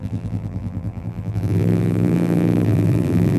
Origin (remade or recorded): remade